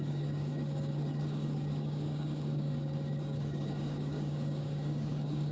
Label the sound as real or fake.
fake